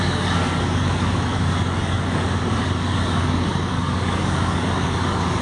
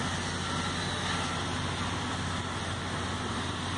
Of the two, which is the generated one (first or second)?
first